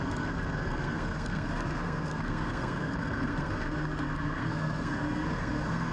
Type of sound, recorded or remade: remade